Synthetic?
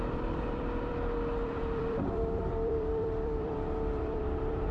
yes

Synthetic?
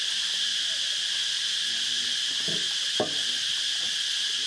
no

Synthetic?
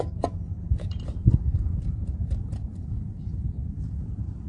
yes